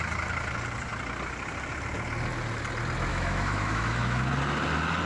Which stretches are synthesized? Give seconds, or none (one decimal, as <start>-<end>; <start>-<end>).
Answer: 3.1-4.3